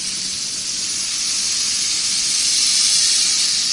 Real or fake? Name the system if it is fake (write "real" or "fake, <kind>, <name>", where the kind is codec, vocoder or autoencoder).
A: fake, vocoder, BigVGAN v2